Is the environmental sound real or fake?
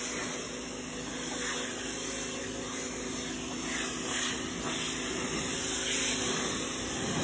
real